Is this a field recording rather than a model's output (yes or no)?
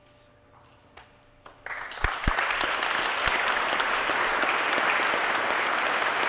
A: yes